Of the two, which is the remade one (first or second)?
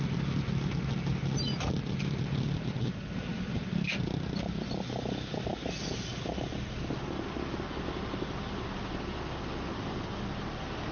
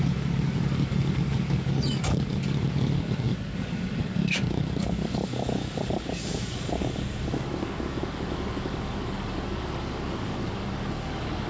second